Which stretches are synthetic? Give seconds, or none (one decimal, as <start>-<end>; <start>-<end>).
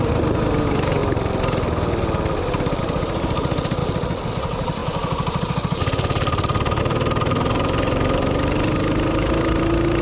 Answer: 0.0-1.0; 2.8-3.8; 4.3-10.0